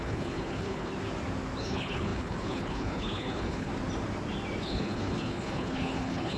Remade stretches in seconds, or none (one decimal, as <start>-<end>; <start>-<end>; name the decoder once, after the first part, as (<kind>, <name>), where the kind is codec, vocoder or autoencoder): 0.0-0.9 (codec, HILCodec); 1.6-3.7; 4.6-6.4